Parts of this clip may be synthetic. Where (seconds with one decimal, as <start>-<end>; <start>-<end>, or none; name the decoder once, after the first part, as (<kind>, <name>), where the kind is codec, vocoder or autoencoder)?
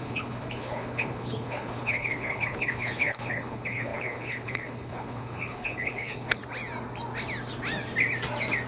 0.0-6.4 (codec, HILCodec)